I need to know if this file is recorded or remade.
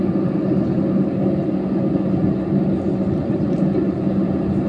recorded